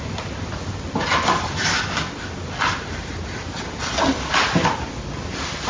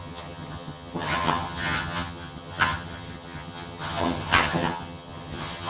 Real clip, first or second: first